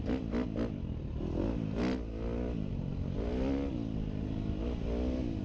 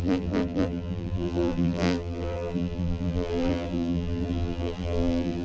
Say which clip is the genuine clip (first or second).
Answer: first